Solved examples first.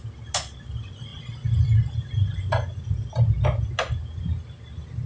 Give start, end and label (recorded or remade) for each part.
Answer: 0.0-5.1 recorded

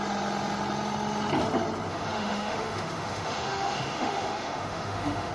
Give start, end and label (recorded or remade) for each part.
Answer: 0.0-1.9 recorded; 1.9-5.3 remade

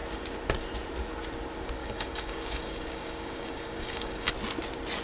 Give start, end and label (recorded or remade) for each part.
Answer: 0.0-1.8 recorded; 1.8-4.3 remade; 4.3-5.0 recorded

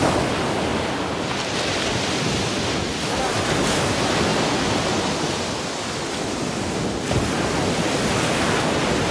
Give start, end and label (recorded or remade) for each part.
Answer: 0.0-9.1 recorded

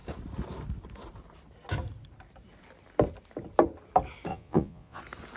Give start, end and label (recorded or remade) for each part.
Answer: 0.0-4.3 recorded; 4.3-5.0 remade; 5.0-5.4 recorded

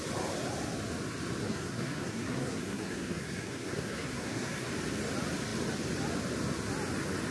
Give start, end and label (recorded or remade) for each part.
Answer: 0.0-1.4 recorded; 1.4-4.7 remade; 4.7-7.3 recorded

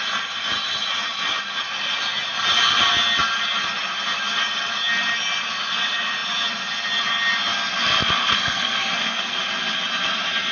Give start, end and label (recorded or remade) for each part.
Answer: 0.0-8.2 recorded; 8.2-9.4 remade; 9.4-10.5 recorded

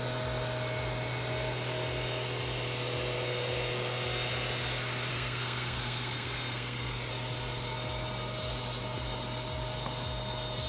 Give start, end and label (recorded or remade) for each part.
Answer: 0.0-5.1 recorded; 5.1-7.1 remade; 7.1-10.7 recorded